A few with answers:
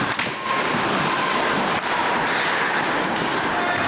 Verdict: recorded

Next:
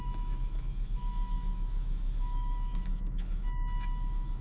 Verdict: remade